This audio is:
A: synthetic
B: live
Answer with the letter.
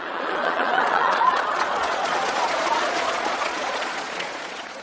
A